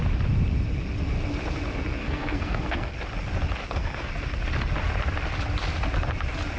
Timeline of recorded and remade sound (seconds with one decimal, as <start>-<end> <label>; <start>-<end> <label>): 0.0-2.0 recorded; 2.0-2.9 remade; 2.9-3.6 recorded; 3.6-4.1 remade; 4.1-6.6 recorded